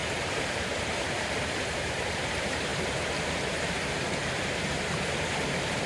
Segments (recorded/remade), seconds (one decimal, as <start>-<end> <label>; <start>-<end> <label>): 0.0-5.9 remade